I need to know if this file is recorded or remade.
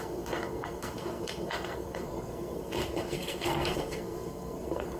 remade